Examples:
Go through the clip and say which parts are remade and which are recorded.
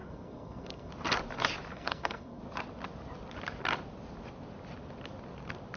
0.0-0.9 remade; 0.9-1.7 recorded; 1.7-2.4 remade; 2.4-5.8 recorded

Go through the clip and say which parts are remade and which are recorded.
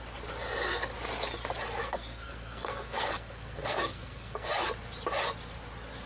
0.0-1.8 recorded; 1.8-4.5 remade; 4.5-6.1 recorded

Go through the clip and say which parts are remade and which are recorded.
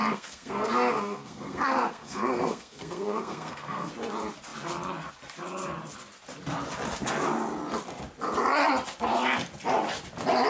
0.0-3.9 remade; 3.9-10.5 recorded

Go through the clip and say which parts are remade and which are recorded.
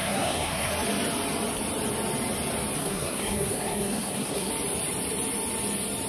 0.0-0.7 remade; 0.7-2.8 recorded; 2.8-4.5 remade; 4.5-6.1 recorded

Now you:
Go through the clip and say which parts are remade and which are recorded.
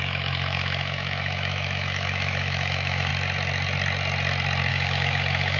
0.0-3.1 remade; 3.1-4.7 recorded; 4.7-5.6 remade